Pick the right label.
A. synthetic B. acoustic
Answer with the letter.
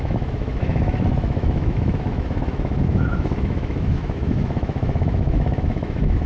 A